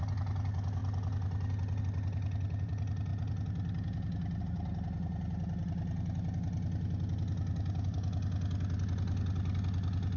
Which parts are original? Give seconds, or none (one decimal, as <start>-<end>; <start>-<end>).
0.0-10.2

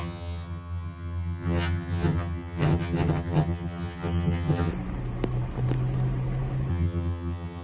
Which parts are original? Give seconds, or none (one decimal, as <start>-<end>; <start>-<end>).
4.7-6.7